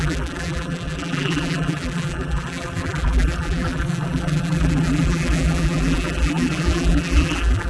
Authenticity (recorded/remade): remade